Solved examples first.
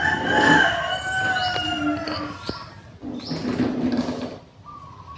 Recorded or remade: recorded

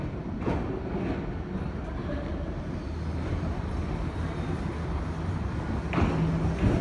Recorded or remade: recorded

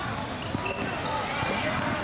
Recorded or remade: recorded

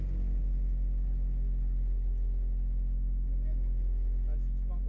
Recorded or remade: recorded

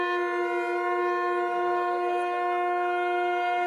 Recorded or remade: recorded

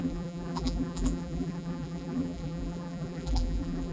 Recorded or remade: remade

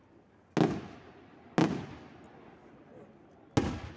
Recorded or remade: recorded